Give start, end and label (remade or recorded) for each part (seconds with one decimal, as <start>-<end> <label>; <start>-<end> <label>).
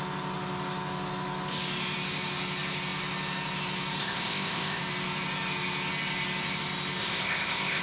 0.0-4.0 recorded; 4.0-4.8 remade; 4.8-7.0 recorded; 7.0-7.8 remade